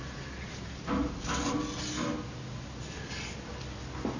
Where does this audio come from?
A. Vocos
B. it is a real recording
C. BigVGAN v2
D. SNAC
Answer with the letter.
B